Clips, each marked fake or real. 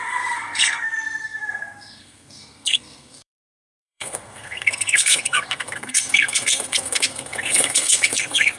fake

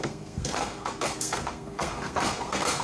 fake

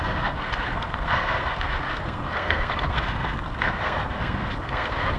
fake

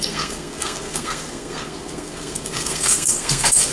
fake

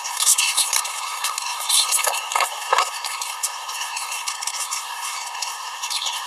fake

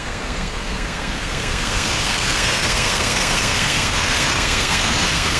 fake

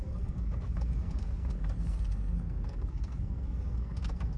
fake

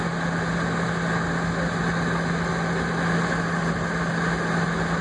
real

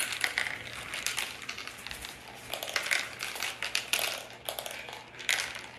real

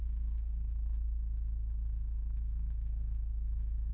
fake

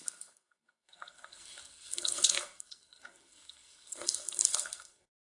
fake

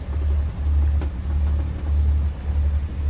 real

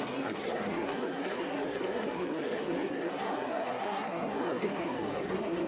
fake